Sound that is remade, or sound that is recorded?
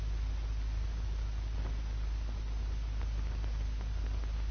recorded